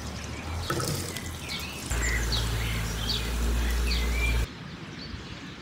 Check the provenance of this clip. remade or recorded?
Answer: recorded